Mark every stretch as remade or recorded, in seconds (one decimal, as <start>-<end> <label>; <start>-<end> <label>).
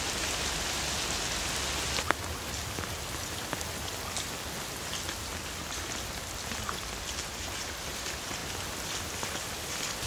0.0-10.1 recorded